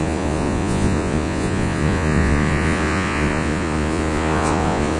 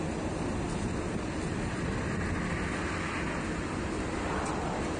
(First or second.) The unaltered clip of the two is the second